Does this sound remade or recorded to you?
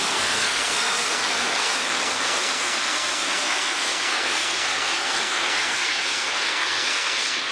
remade